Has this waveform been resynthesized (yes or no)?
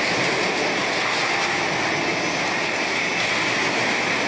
no